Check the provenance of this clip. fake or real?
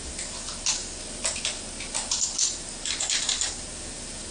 real